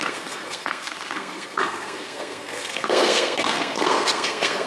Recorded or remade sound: remade